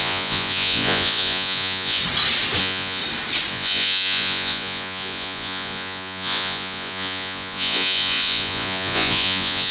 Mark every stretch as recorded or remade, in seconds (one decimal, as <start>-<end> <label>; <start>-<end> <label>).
0.0-2.0 remade; 2.0-2.6 recorded; 2.6-3.0 remade; 3.0-3.5 recorded; 3.5-9.7 remade